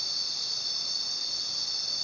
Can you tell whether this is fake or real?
real